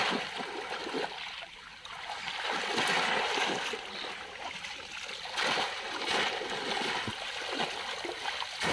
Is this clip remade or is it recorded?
recorded